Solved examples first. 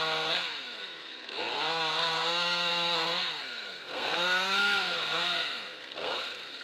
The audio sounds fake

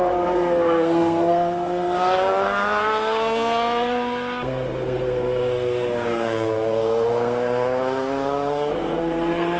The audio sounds fake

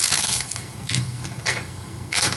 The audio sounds fake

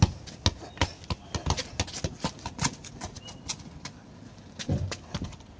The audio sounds real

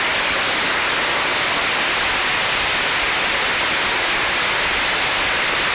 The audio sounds real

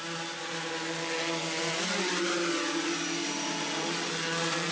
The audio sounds real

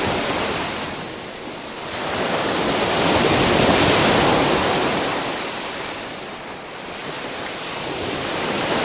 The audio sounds real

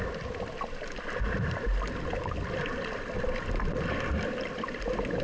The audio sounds real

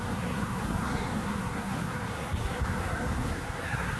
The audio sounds fake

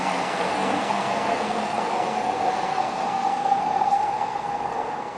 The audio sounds fake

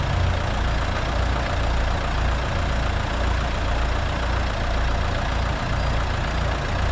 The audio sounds real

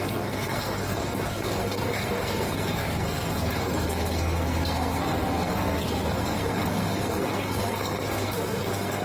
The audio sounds fake